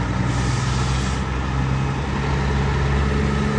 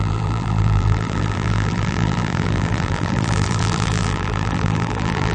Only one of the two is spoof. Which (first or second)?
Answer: second